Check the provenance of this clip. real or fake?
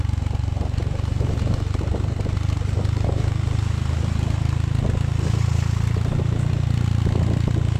real